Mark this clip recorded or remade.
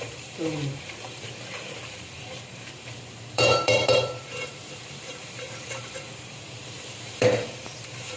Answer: remade